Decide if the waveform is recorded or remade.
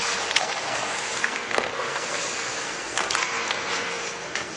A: remade